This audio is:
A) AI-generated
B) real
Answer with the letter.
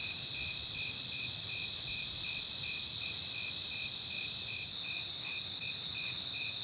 B